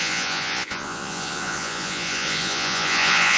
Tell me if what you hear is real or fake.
fake